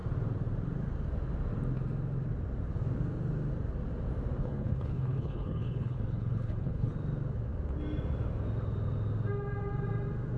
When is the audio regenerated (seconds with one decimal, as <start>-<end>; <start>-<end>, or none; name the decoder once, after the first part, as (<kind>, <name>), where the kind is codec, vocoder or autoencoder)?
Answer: 4.4-6.9 (codec, HILCodec)